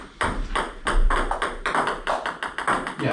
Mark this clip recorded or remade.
recorded